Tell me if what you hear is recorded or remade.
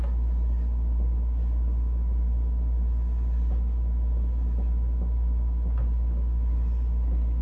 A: recorded